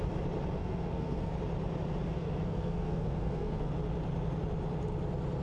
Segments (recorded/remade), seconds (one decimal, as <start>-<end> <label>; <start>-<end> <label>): 0.0-0.6 recorded; 0.6-1.3 remade; 1.3-2.1 recorded; 2.1-3.7 remade; 3.7-5.4 recorded